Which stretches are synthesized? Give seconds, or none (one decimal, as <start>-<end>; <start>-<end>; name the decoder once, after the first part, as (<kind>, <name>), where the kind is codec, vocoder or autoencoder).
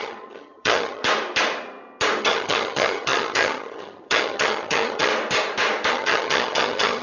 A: 0.0-1.0 (vocoder, HiFi-GAN); 2.2-5.1; 5.9-7.0